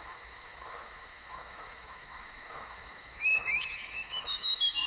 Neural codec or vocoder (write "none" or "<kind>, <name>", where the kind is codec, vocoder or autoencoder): autoencoder, DAC-VAE